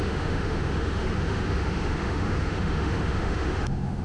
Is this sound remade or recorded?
remade